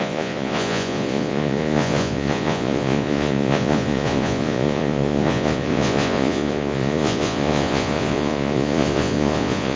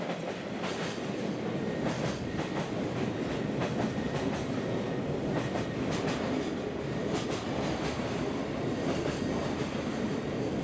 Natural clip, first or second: second